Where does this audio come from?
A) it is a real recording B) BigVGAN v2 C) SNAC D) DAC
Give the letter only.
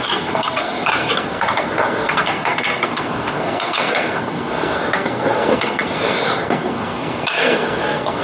C